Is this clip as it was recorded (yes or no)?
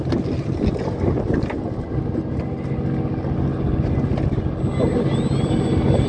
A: yes